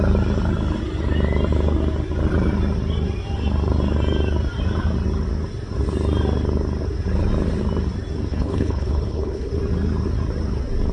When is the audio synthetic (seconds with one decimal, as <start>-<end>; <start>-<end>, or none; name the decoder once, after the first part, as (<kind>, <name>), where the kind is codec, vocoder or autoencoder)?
8.3-9.5 (codec, HILCodec)